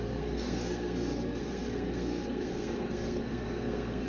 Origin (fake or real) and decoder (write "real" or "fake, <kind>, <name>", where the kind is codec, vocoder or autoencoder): fake, codec, SNAC